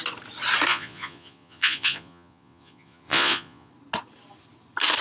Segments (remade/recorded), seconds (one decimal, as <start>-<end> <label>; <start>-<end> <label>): 0.0-0.7 recorded; 0.7-3.7 remade; 3.7-5.0 recorded